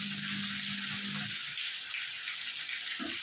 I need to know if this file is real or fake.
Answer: real